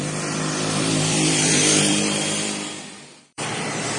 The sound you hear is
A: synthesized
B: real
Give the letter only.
A